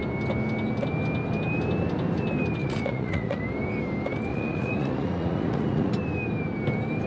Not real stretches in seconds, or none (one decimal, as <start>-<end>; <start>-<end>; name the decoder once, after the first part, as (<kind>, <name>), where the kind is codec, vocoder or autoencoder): 2.6-3.4 (vocoder, Vocos); 4.3-5.9